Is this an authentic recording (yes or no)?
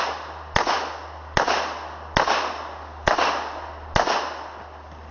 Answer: yes